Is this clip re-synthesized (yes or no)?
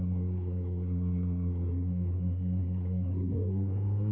yes